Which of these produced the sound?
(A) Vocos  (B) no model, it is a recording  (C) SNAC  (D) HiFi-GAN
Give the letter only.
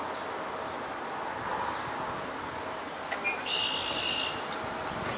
B